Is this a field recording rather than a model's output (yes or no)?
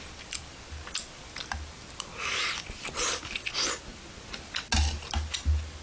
yes